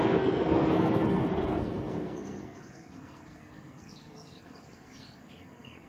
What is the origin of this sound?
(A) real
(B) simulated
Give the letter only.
B